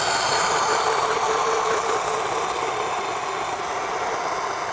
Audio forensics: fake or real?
real